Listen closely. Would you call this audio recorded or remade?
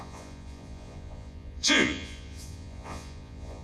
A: remade